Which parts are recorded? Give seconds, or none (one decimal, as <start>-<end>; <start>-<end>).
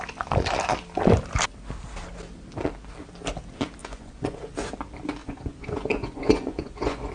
0.0-3.8; 4.4-5.2